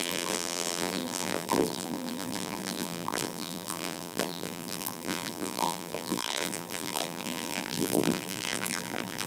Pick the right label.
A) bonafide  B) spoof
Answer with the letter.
B